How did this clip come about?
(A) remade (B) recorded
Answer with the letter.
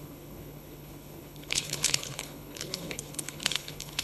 A